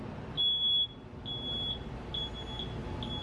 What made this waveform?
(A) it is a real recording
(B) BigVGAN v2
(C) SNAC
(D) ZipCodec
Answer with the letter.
A